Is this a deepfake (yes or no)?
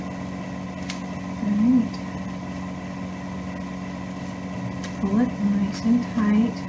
no